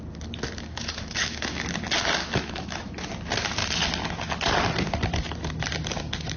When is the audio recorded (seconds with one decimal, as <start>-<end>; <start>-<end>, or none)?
0.0-0.7; 1.7-2.2; 3.1-6.4